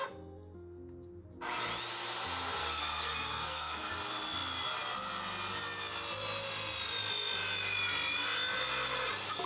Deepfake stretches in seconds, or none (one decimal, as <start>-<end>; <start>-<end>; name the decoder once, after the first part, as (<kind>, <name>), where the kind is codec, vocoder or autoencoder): 2.6-3.9 (codec, SNAC)